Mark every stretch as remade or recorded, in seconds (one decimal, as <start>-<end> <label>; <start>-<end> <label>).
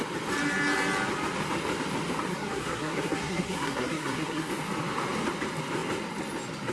0.0-2.3 recorded; 2.3-4.5 remade; 4.5-6.7 recorded